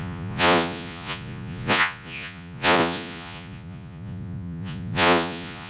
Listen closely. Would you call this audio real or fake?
fake